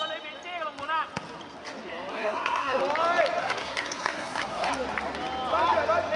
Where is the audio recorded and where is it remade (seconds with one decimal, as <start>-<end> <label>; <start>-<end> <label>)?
0.0-2.1 recorded; 2.1-2.8 remade; 2.8-3.4 recorded; 3.4-4.7 remade; 4.7-6.2 recorded